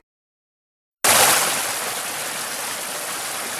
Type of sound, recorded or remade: recorded